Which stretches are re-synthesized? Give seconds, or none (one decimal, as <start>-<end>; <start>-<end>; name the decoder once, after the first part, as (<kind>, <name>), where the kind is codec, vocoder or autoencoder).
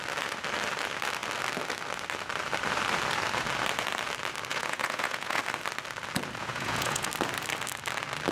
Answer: 4.5-5.4 (vocoder, Vocos); 6.4-7.1